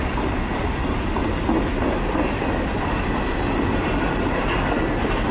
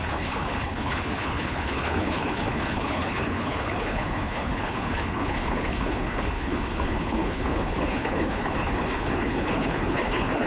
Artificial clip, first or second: second